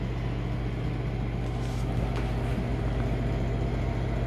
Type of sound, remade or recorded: recorded